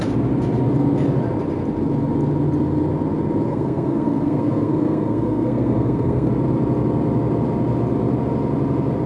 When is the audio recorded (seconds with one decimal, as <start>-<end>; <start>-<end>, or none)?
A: 0.0-3.5; 6.3-9.1